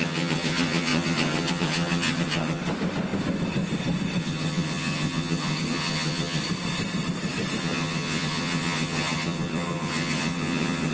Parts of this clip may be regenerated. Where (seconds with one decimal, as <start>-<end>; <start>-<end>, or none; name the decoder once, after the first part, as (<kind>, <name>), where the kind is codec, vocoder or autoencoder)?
0.0-2.6 (vocoder, HiFi-GAN); 4.2-6.4; 7.6-10.9